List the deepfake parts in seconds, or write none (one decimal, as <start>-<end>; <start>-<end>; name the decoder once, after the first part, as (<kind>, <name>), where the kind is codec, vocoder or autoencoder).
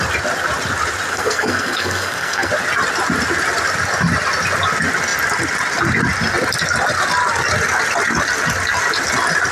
1.1-2.5 (codec, SNAC)